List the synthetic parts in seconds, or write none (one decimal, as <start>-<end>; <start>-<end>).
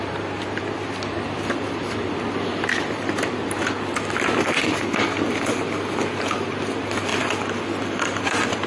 none